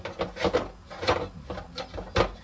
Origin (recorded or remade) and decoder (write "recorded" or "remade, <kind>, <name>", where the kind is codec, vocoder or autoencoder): recorded